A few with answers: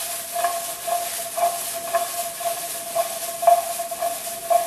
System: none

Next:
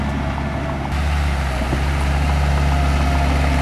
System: none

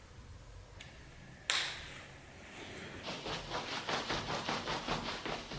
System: none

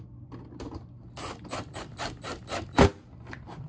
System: none